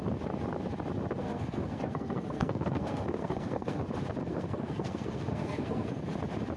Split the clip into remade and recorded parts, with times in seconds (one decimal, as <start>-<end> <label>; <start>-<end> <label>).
0.0-1.2 recorded; 1.2-3.8 remade; 3.8-4.2 recorded; 4.2-6.0 remade; 6.0-6.6 recorded